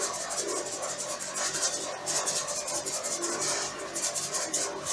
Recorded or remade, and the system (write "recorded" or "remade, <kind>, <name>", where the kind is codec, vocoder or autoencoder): recorded